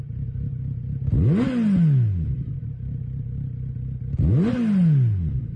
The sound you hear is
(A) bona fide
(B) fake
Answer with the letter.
A